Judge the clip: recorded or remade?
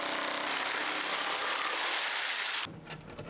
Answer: recorded